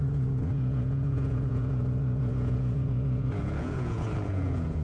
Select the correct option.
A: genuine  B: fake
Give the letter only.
B